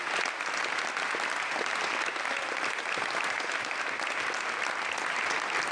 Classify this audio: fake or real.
real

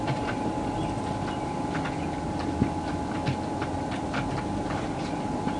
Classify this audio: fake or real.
real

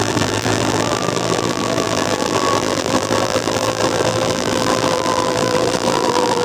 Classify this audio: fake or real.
fake